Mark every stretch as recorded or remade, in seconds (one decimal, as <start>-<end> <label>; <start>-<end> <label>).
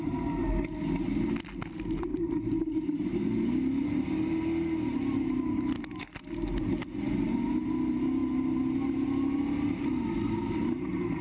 0.0-11.2 recorded